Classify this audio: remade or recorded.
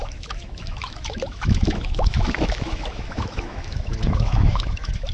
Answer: remade